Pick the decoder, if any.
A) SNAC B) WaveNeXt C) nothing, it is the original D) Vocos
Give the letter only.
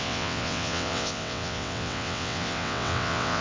B